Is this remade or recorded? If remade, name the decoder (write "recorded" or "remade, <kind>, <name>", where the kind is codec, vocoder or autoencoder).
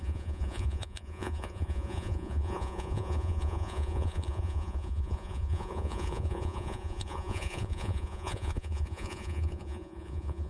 remade, vocoder, Vocos